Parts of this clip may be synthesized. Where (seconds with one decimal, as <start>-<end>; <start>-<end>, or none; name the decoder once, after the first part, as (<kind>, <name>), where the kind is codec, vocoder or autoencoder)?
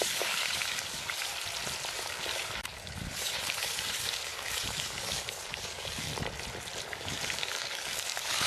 0.0-1.3 (codec, DAC); 1.9-6.1; 6.8-8.5